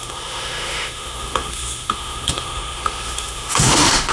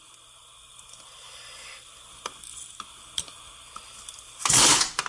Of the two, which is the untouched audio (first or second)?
second